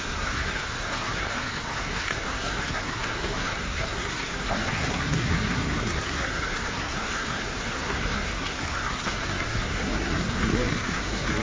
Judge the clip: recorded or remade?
remade